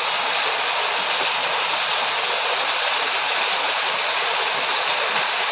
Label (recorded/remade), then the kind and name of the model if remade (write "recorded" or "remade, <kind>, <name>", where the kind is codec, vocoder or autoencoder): recorded